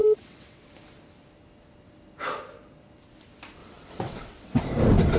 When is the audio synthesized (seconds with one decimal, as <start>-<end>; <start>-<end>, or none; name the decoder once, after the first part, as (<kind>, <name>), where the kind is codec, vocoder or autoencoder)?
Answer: 0.0-0.6 (vocoder, WaveNeXt); 3.6-4.6